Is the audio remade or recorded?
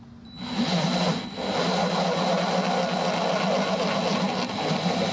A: recorded